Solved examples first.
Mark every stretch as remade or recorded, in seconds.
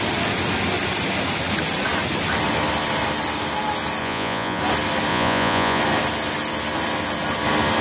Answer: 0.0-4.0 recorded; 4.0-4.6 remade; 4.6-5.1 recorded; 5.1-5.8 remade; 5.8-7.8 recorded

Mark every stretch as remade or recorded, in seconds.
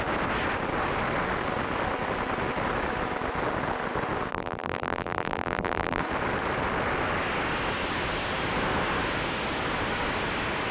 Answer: 0.0-4.3 recorded; 4.3-6.0 remade; 6.0-10.7 recorded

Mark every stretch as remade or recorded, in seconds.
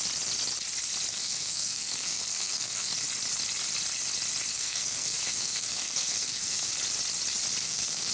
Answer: 0.0-1.1 recorded; 1.1-2.9 remade; 2.9-4.5 recorded; 4.5-6.7 remade; 6.7-7.6 recorded; 7.6-8.1 remade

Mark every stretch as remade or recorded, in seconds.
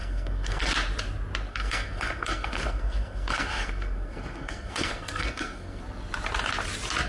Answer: 0.0-0.7 remade; 0.7-1.5 recorded; 1.5-5.8 remade; 5.8-7.1 recorded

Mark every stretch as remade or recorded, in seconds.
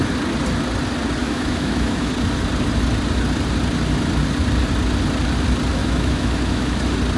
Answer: 0.0-1.2 recorded; 1.2-2.1 remade; 2.1-5.8 recorded; 5.8-6.8 remade; 6.8-7.2 recorded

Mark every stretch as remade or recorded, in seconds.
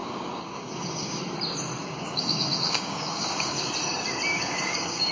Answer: 0.0-1.2 remade; 1.2-1.8 recorded; 1.8-3.7 remade; 3.7-4.3 recorded; 4.3-5.1 remade